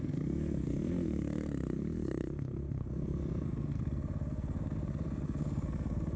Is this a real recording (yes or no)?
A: no